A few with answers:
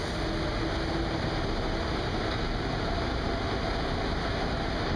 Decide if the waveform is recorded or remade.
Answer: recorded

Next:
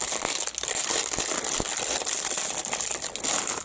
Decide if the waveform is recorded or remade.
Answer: recorded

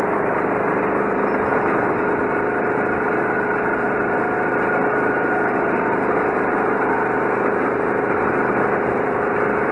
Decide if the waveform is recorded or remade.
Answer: recorded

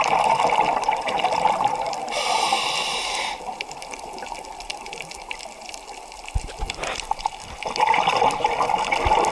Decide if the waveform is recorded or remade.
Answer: remade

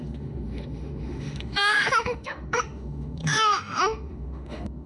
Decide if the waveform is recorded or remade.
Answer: remade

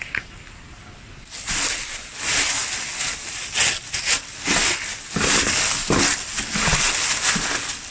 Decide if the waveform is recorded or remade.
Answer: recorded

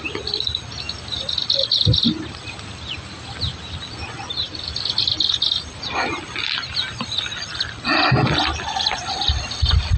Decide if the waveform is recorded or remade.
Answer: recorded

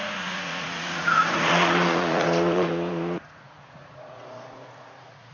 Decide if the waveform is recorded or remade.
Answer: remade